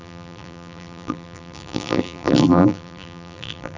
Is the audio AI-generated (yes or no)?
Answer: yes